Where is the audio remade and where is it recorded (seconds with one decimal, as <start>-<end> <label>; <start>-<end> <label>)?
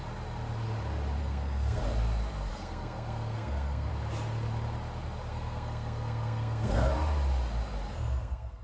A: 0.0-1.2 recorded; 1.2-1.8 remade; 1.8-2.5 recorded; 2.5-3.9 remade; 3.9-5.3 recorded; 5.3-6.8 remade; 6.8-7.9 recorded; 7.9-8.6 remade